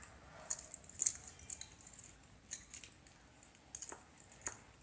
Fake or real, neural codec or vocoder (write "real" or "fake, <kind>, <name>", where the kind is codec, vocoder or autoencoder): real